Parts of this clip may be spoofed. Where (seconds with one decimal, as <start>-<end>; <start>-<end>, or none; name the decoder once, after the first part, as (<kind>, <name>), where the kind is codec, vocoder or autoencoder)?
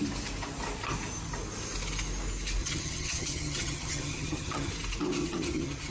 2.6-4.7 (vocoder, HiFi-GAN); 5.2-5.9